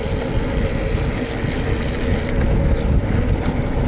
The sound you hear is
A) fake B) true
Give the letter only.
B